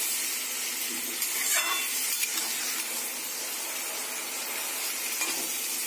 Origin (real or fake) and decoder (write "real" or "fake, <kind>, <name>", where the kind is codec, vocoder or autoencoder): real